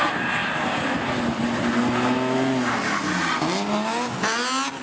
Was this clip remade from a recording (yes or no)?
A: no